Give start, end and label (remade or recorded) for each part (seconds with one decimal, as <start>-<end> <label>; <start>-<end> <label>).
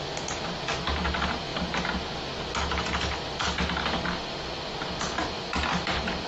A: 0.0-6.3 recorded